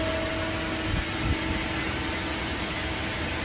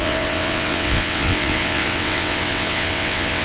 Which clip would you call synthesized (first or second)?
second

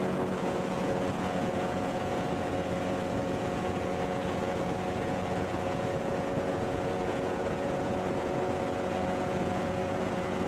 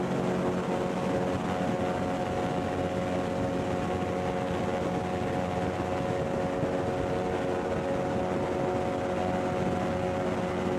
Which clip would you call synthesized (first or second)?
first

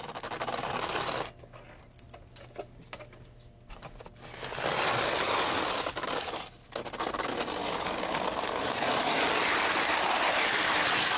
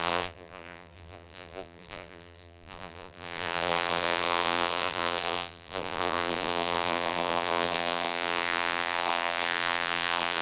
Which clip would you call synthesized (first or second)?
second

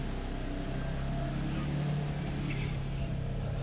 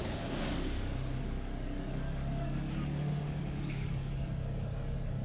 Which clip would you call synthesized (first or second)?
second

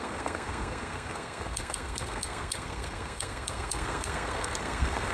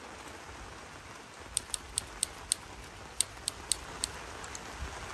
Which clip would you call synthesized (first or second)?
first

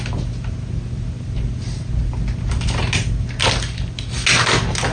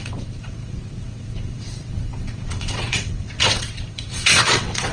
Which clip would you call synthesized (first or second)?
second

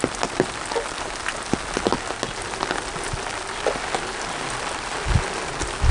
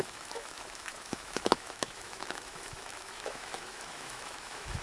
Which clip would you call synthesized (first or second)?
second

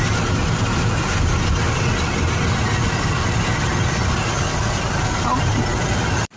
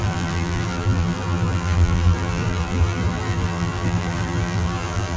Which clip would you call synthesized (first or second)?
second